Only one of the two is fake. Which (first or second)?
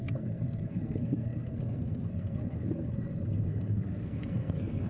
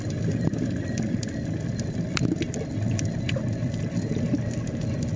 first